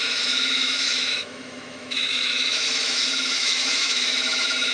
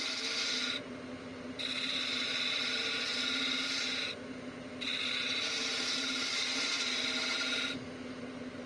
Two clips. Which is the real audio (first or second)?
second